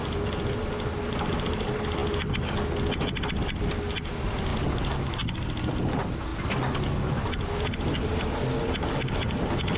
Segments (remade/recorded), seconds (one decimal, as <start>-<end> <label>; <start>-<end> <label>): 0.0-9.8 recorded